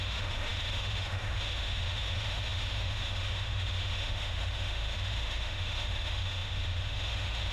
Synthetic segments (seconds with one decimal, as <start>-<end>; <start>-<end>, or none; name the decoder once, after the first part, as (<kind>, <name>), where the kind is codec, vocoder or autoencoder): 0.0-7.5 (autoencoder, DAC-VAE)